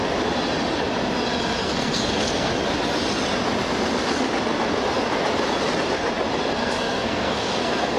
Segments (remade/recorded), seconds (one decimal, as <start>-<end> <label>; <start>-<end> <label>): 0.0-1.6 recorded; 1.6-2.5 remade; 2.5-6.6 recorded; 6.6-8.0 remade